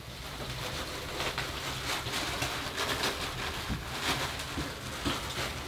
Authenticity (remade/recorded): recorded